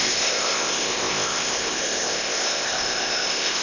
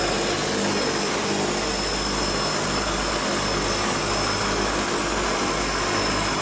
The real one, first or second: second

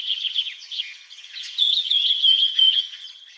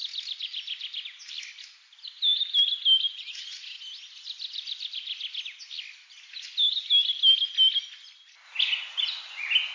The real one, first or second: second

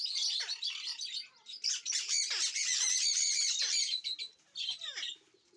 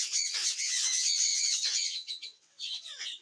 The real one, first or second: first